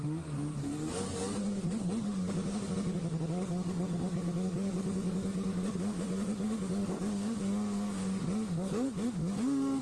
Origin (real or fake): fake